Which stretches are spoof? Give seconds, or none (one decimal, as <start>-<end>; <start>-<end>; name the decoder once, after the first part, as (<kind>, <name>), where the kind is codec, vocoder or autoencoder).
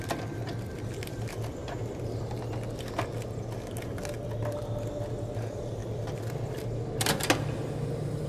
none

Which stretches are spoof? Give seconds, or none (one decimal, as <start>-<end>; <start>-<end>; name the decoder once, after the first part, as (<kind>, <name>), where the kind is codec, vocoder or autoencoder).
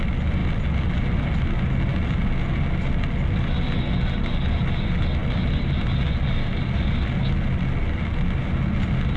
none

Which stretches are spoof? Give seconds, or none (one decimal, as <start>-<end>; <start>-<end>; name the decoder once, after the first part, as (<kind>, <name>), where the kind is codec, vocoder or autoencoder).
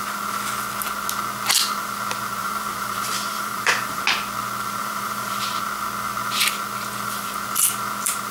2.4-4.0 (vocoder, BigVGAN v2); 4.8-5.4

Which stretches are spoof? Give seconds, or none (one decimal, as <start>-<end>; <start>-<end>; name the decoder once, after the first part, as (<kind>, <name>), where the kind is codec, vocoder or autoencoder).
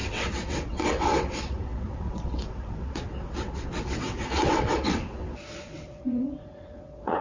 0.0-7.2 (vocoder, WaveNeXt)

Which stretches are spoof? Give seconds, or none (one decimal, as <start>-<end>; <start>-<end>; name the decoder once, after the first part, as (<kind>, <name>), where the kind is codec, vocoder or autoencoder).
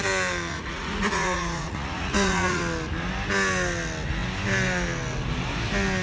0.5-2.6 (vocoder, Vocos)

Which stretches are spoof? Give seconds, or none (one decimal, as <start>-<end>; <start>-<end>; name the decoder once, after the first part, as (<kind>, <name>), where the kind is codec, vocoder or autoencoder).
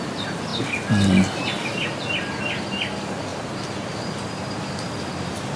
none